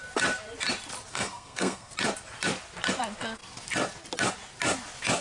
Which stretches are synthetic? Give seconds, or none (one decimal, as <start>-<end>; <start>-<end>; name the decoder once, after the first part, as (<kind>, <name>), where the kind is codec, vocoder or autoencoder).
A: 1.1-1.9 (codec, SNAC)